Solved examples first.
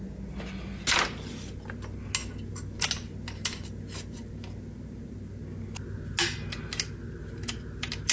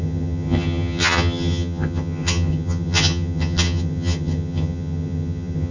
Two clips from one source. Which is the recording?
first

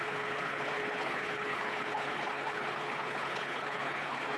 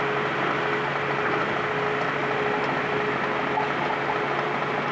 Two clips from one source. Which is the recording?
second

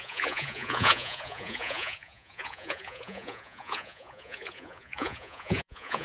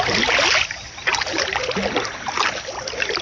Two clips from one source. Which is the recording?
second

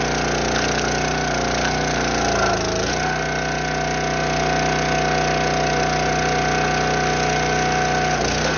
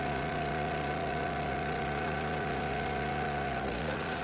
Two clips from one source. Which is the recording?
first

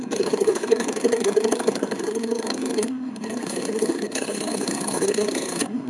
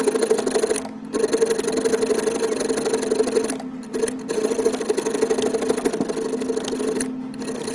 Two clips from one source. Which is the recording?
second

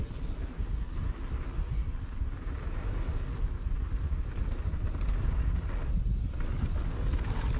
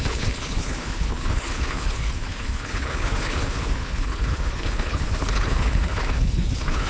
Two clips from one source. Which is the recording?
first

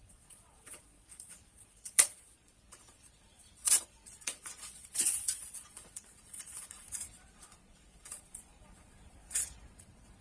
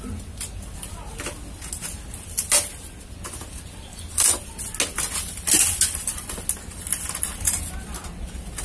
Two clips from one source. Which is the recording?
second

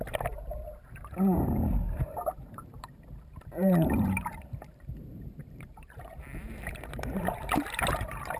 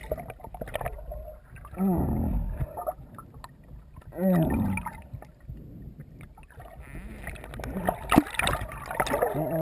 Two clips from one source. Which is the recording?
second